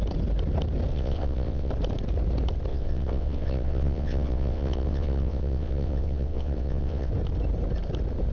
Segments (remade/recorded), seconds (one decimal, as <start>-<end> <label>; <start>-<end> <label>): 0.0-0.9 recorded; 0.9-1.7 remade; 1.7-2.7 recorded; 2.7-7.1 remade; 7.1-8.3 recorded